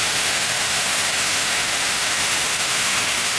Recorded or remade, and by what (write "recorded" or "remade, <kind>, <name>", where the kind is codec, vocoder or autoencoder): remade, autoencoder, DAC-VAE